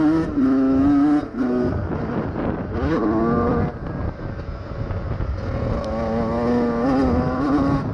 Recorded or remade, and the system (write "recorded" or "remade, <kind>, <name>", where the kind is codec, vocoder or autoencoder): recorded